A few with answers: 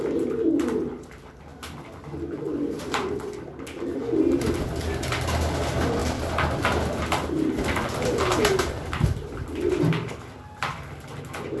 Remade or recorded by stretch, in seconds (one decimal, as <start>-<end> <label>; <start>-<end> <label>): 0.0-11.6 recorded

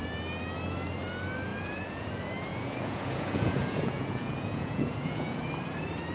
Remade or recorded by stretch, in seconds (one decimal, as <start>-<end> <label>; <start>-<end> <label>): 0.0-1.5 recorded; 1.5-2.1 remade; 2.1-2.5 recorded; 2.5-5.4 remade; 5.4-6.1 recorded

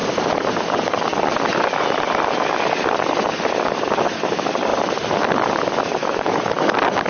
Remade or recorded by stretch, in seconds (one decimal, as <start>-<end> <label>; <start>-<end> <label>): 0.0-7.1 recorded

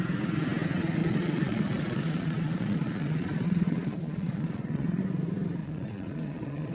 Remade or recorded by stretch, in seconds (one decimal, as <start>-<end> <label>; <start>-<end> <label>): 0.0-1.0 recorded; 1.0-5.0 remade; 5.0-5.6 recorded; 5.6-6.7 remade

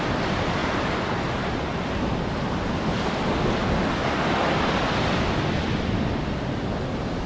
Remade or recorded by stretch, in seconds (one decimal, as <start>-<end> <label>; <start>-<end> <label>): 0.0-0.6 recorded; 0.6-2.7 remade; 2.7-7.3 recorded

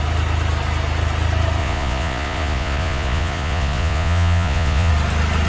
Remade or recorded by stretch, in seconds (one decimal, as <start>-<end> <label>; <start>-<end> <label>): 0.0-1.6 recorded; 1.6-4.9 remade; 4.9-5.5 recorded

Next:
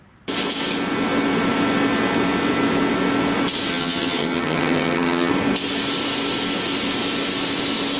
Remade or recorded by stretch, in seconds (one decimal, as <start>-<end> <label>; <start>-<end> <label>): 0.0-3.7 recorded; 3.7-5.3 remade; 5.3-8.0 recorded

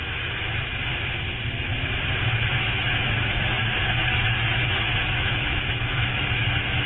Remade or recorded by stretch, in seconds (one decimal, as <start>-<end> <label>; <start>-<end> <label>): 0.0-0.9 remade; 0.9-2.2 recorded; 2.2-6.9 remade